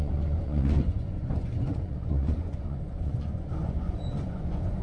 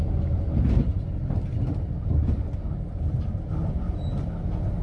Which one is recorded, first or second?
second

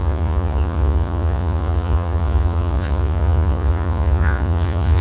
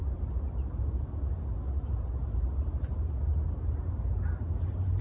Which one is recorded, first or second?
second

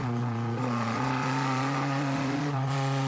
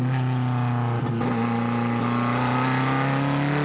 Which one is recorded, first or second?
second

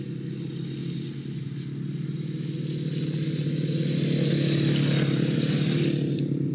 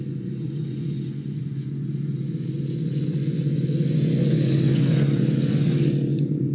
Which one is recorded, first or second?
first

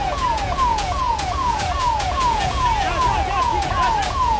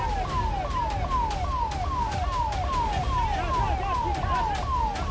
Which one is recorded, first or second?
second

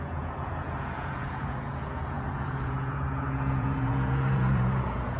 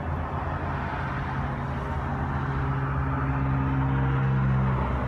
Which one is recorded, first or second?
second